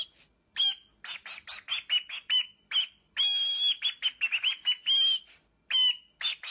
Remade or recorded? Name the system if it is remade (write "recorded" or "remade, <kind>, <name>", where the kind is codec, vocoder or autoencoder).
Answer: recorded